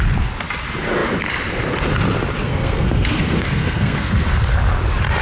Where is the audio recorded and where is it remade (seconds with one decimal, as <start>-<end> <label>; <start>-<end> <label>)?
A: 0.0-2.4 recorded; 2.4-4.3 remade; 4.3-5.2 recorded